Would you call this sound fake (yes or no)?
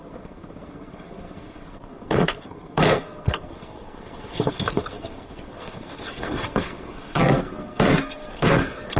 yes